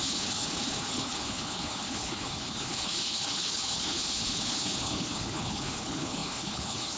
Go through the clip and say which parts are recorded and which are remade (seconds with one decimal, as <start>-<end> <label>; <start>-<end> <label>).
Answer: 0.0-7.0 remade